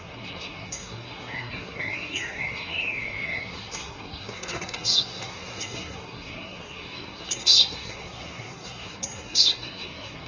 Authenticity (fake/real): fake